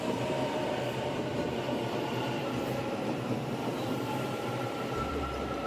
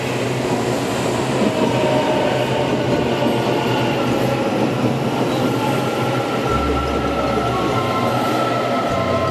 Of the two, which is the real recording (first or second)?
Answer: second